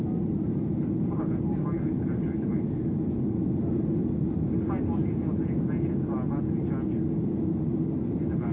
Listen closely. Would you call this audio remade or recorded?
recorded